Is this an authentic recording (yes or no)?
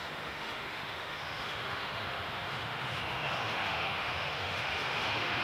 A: no